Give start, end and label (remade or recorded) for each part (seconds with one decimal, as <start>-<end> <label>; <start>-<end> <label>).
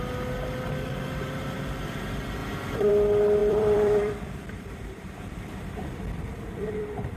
0.0-3.4 recorded; 3.4-6.8 remade; 6.8-7.2 recorded